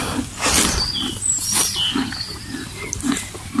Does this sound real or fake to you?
real